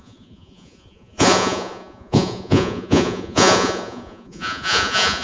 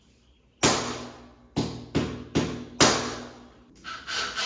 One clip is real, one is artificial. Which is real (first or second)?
second